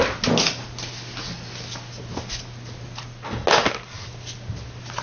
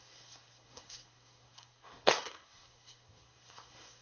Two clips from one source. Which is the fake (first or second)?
second